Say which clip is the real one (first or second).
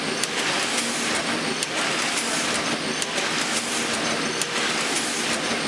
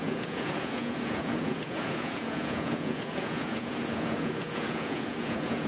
first